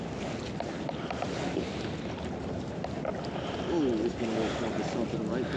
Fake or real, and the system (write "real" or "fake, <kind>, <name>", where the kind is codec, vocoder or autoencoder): real